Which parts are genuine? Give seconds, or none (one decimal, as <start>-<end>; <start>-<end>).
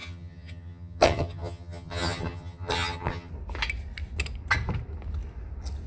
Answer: 3.3-5.9